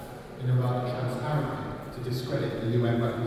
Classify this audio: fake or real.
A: real